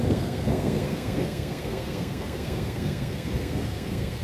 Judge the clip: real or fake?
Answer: fake